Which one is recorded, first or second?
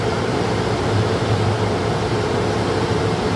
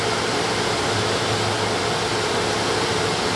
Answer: second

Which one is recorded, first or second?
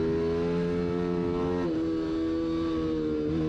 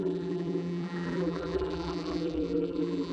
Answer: first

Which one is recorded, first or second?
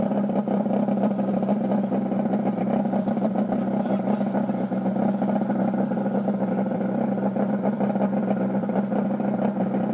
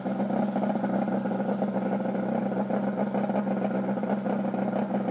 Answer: second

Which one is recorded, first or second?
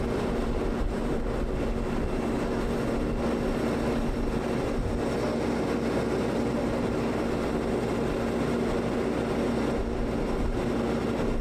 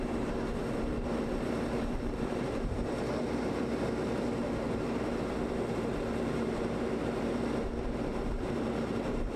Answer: first